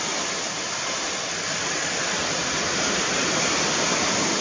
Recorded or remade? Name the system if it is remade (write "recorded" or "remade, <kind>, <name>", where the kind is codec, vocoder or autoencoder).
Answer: recorded